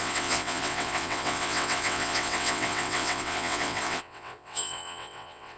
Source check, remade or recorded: remade